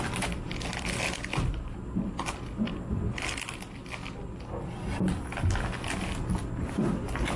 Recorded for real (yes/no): yes